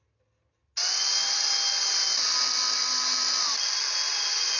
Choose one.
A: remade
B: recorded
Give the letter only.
B